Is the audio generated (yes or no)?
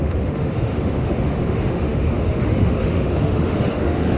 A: yes